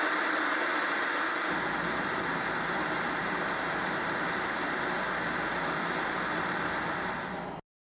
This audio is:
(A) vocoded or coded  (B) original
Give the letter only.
B